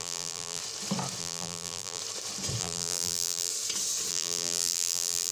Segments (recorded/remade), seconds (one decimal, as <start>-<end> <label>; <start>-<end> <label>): 0.0-0.6 remade; 0.6-1.2 recorded; 1.2-2.0 remade; 2.0-2.6 recorded; 2.6-3.5 remade; 3.5-4.1 recorded; 4.1-5.3 remade